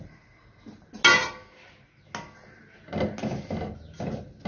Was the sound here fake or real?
real